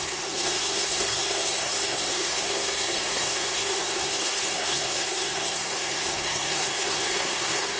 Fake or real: fake